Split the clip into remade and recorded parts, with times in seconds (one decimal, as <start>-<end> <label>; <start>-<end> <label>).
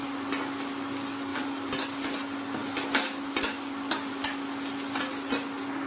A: 0.0-5.9 recorded